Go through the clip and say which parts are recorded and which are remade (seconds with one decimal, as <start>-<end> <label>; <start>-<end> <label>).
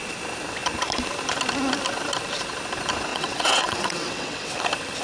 0.0-3.1 recorded; 3.1-4.6 remade; 4.6-5.0 recorded